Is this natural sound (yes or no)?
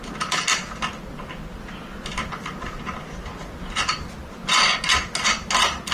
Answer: yes